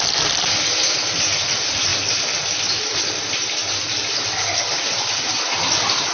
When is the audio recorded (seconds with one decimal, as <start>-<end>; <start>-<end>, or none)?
0.0-6.1